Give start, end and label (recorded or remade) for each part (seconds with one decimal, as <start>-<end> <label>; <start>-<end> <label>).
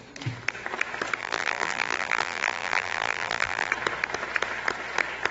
0.0-1.2 recorded; 1.2-3.7 remade; 3.7-5.3 recorded